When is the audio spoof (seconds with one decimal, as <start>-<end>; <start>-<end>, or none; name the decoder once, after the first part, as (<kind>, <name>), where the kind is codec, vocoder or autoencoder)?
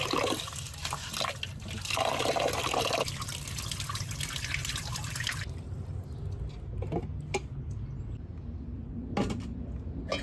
none